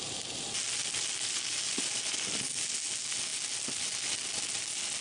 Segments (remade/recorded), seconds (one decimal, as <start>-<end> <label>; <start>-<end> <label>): 0.0-5.0 recorded